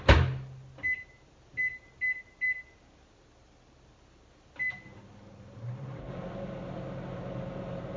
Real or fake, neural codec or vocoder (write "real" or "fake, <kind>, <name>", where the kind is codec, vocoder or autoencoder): real